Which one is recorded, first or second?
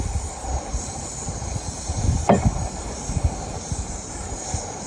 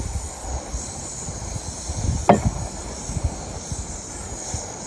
second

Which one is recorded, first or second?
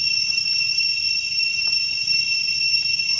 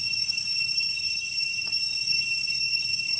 first